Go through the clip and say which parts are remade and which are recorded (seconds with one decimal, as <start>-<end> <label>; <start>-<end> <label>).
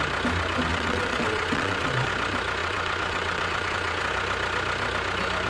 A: 0.0-0.7 recorded; 0.7-2.1 remade; 2.1-2.6 recorded; 2.6-4.0 remade; 4.0-5.5 recorded